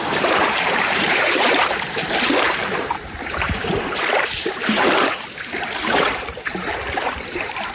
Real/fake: fake